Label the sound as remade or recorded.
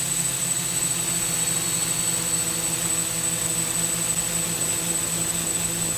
recorded